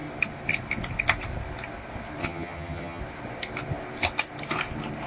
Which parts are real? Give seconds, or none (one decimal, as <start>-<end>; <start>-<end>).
0.0-2.2; 3.0-5.1